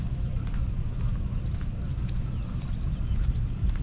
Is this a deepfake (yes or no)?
no